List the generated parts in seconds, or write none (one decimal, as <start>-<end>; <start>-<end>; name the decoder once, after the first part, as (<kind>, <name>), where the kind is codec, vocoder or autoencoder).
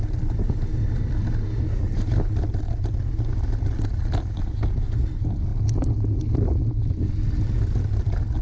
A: none